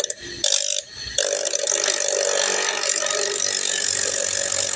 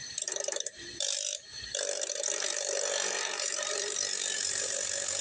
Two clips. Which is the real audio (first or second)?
first